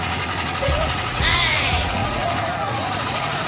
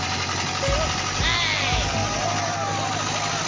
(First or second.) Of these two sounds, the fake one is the first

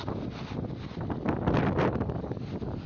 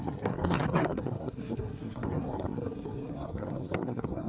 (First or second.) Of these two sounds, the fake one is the second